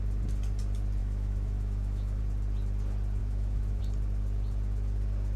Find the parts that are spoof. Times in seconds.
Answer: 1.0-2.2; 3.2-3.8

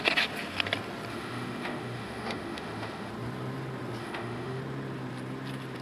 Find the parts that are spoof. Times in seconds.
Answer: 1.1-3.1; 4.0-4.6

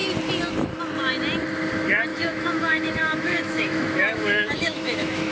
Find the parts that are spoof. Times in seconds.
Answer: 2.1-5.3

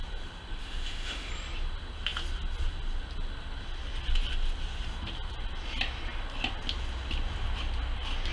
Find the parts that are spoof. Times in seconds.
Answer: 0.6-1.3

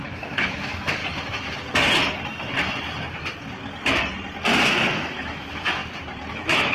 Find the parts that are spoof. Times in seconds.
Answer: 0.0-1.0; 5.0-5.8; 6.3-6.7

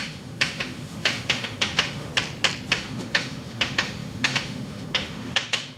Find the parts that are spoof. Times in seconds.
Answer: 0.0-2.1; 2.7-5.8

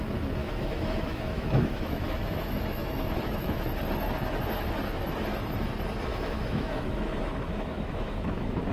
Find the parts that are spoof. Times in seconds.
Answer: 0.4-3.7; 6.1-8.7

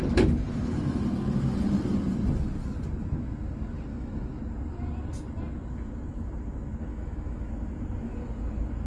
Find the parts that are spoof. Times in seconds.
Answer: 3.9-4.4; 6.9-7.5